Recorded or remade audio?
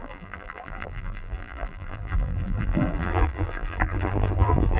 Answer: remade